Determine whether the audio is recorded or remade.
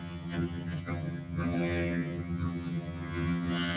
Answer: remade